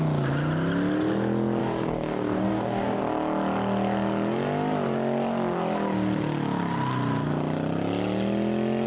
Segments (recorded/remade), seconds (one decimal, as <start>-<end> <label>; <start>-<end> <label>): 0.0-1.6 recorded; 1.6-3.0 remade; 3.0-8.9 recorded